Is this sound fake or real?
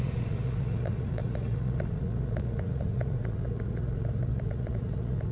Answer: fake